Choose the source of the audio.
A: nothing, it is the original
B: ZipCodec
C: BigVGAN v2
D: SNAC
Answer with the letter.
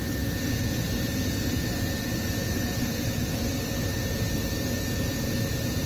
A